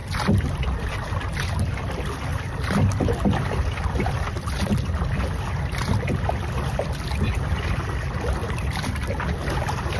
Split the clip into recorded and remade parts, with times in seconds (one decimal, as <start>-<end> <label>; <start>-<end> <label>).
0.0-10.0 recorded